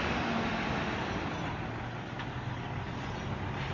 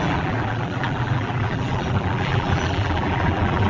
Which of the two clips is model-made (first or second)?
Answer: second